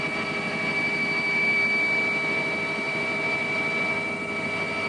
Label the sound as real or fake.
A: real